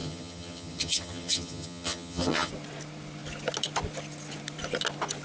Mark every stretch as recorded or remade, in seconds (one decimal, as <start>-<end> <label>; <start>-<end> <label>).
0.0-2.5 remade; 2.5-5.2 recorded